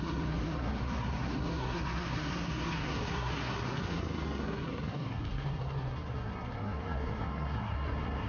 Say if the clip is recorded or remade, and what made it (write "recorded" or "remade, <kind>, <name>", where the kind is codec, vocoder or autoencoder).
remade, codec, SNAC